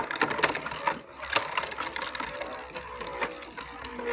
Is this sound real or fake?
real